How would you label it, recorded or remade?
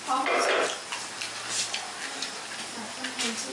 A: recorded